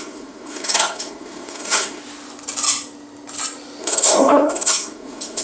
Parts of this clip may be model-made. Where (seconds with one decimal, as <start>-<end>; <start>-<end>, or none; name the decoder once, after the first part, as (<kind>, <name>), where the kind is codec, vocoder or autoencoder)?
0.0-2.0 (codec, SNAC); 3.8-5.4